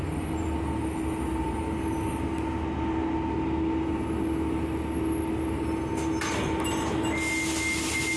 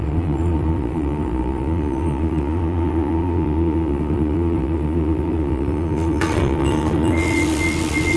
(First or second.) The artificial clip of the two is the second